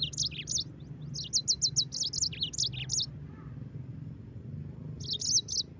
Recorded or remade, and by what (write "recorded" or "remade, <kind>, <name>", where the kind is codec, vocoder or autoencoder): recorded